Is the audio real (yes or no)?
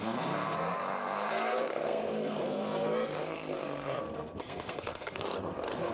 no